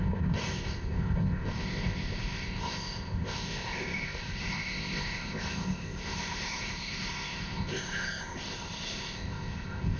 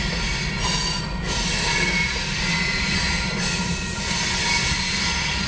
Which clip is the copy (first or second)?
first